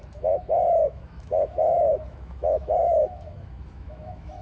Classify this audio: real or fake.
fake